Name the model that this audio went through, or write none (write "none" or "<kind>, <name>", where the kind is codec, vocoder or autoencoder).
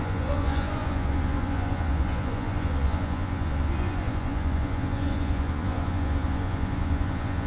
vocoder, Vocos